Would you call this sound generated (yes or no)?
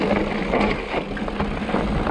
no